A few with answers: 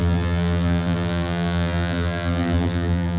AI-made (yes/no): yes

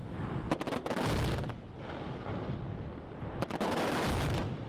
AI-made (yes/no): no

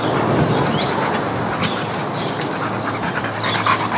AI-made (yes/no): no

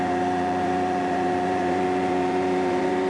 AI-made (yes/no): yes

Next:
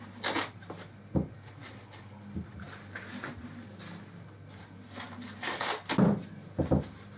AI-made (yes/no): no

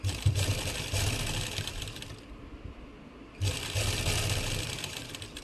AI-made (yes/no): no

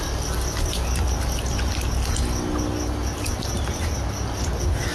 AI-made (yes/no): no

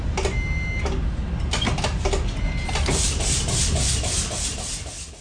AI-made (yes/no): no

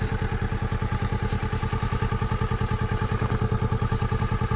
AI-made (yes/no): no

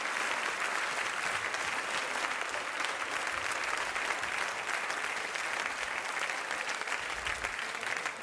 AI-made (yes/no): no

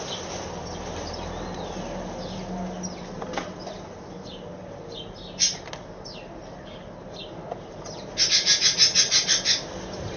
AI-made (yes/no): no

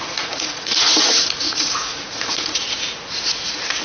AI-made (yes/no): yes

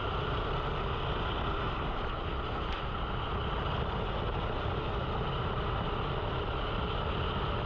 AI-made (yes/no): no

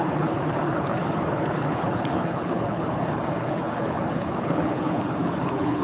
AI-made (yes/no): yes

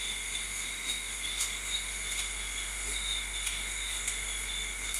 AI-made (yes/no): yes